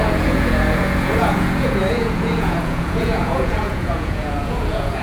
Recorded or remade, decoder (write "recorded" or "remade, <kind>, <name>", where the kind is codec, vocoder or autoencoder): remade, vocoder, Vocos